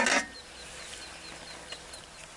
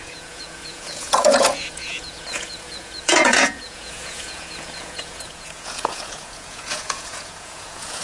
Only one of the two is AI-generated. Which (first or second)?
second